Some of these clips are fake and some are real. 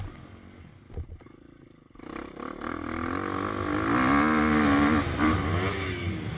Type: real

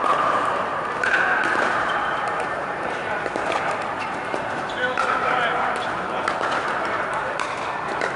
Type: fake